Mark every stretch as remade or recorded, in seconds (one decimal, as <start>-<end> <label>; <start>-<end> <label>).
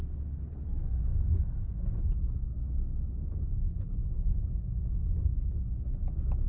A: 0.0-6.5 recorded